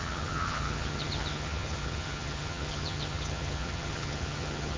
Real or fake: fake